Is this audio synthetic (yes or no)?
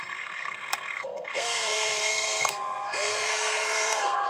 yes